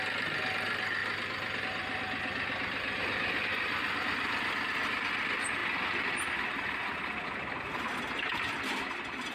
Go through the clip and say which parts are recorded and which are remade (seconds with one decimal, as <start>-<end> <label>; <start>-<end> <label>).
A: 0.0-9.3 recorded